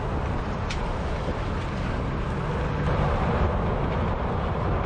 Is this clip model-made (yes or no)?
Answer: no